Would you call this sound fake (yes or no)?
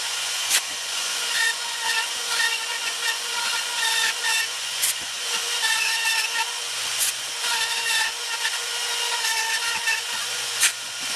yes